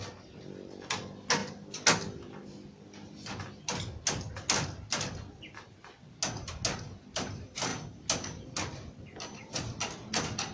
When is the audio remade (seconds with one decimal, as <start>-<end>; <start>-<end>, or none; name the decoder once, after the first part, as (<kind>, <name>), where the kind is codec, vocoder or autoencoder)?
none